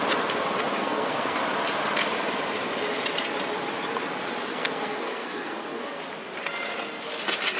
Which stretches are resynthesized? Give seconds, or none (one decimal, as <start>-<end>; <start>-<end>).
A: 0.8-1.4; 4.5-6.0